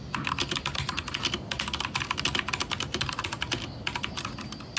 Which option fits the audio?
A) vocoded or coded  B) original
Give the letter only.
B